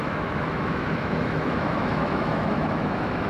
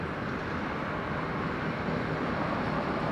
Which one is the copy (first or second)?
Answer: first